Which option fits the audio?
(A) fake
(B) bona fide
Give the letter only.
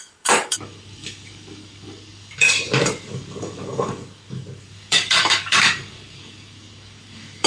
A